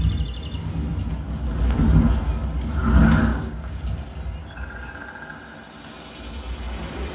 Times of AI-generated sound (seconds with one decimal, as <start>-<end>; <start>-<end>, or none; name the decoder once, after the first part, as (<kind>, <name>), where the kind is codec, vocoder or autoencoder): 3.3-3.8 (codec, DAC); 4.4-4.9